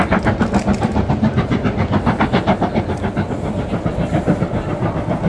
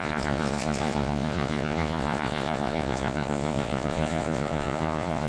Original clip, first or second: first